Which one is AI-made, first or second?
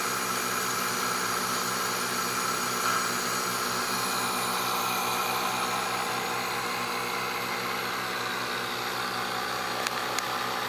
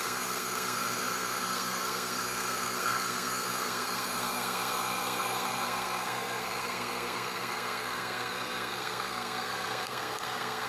second